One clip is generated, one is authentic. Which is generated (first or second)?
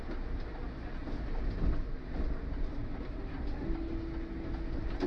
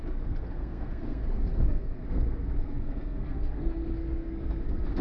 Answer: second